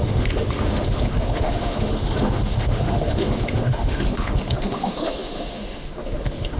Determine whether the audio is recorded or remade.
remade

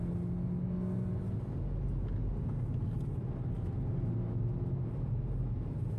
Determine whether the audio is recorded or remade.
recorded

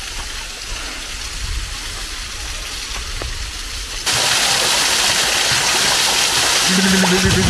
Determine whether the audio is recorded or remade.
recorded